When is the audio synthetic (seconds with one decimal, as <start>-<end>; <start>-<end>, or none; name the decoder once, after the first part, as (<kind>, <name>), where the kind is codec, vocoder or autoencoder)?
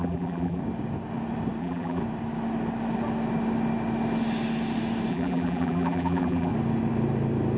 0.0-0.6 (vocoder, BigVGAN v2); 1.6-2.0; 5.1-6.5